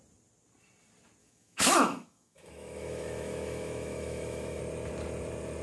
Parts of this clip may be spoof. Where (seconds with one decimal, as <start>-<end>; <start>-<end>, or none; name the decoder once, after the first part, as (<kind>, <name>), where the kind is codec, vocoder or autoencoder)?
1.2-4.6 (autoencoder, DAC-VAE)